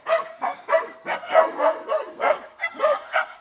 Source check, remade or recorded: remade